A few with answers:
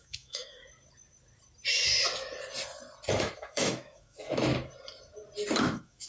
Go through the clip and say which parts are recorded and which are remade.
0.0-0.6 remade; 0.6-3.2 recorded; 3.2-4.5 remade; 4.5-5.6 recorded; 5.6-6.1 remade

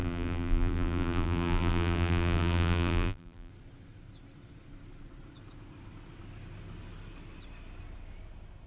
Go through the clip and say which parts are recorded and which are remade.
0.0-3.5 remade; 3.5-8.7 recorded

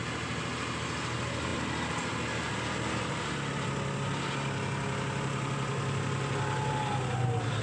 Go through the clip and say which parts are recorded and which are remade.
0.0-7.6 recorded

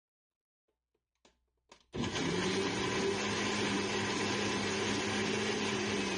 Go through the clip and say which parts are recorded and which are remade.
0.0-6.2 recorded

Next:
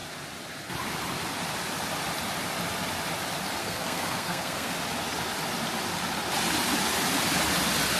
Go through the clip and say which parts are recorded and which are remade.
0.0-3.6 recorded; 3.6-4.7 remade; 4.7-8.0 recorded

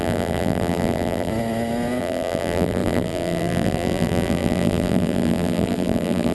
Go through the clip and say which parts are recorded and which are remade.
0.0-1.3 remade; 1.3-2.0 recorded; 2.0-6.3 remade

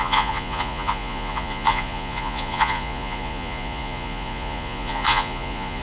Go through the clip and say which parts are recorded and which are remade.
0.0-5.8 remade